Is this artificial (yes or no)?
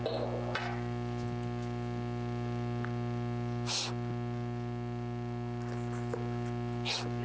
no